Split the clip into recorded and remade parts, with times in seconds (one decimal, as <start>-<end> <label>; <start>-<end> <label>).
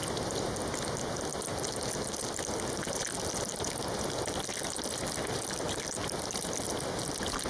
0.0-7.5 recorded